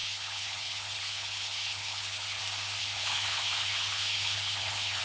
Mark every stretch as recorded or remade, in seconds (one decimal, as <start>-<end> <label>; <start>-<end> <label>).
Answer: 0.0-2.4 remade; 2.4-2.8 recorded; 2.8-5.0 remade